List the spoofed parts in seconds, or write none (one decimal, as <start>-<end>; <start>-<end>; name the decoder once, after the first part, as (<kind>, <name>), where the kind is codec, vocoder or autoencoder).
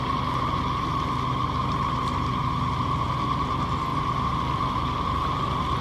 none